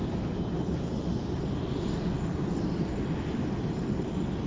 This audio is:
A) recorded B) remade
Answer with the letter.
A